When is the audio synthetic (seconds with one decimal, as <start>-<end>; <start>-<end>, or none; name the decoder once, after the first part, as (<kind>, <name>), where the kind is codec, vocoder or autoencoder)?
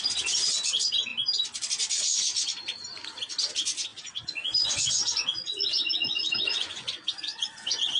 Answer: 3.9-8.0 (vocoder, Vocos)